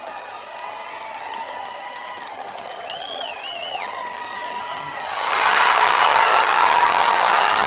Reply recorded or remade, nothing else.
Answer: remade